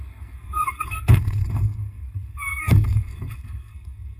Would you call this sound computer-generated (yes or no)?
yes